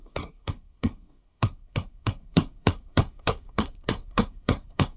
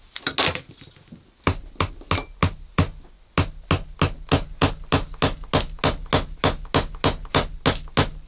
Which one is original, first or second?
second